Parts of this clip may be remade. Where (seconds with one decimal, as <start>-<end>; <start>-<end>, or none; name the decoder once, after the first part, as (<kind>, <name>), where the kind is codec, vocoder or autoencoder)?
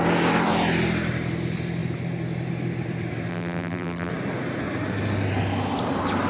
3.3-4.1 (vocoder, BigVGAN v2)